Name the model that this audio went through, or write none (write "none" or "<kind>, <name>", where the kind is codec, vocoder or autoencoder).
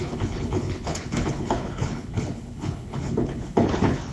codec, HILCodec